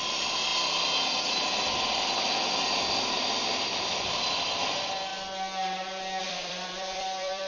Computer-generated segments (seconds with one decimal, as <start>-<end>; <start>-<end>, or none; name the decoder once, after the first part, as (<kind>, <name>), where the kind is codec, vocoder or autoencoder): 0.0-0.5 (vocoder, BigVGAN v2); 3.0-5.1; 6.2-7.5